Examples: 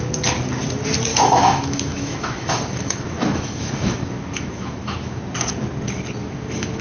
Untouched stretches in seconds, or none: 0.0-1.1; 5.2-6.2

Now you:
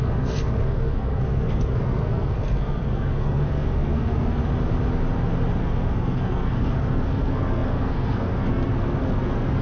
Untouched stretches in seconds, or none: 4.4-5.6

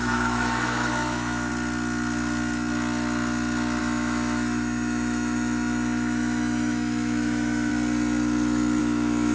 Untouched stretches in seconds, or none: 1.5-3.8; 7.7-8.8